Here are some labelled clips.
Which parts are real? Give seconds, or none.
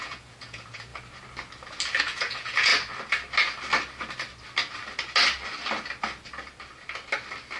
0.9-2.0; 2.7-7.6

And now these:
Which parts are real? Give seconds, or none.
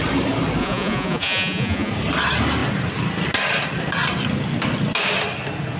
0.0-0.6; 1.9-5.8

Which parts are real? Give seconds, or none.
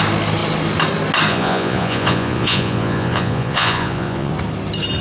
0.0-1.3; 4.3-5.0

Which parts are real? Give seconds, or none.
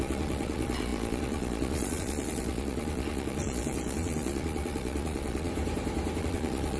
5.5-6.2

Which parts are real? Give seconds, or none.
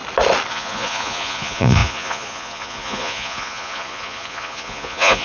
0.0-0.5